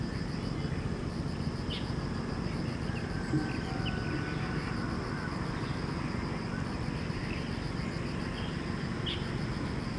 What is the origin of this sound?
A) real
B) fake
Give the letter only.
A